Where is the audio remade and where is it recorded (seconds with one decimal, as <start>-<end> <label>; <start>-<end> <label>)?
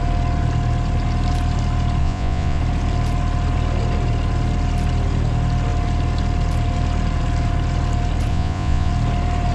0.0-2.0 recorded; 2.0-2.6 remade; 2.6-8.3 recorded; 8.3-8.9 remade; 8.9-9.5 recorded